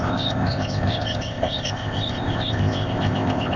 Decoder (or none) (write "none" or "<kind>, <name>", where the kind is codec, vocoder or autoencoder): codec, ZipCodec